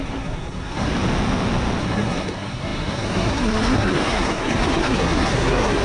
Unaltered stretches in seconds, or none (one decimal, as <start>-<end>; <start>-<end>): 0.9-1.8